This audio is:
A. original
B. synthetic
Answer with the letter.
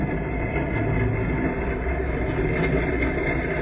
A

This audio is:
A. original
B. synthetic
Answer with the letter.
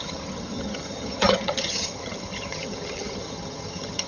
B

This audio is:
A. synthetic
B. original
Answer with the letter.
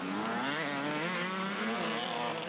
B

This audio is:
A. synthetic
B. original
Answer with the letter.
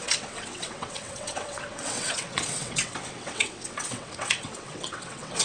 A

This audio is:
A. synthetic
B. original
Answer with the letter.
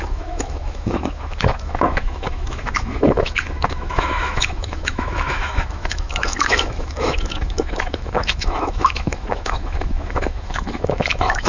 A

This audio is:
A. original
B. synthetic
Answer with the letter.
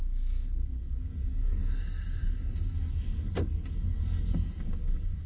B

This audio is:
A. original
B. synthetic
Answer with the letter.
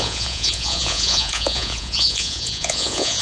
B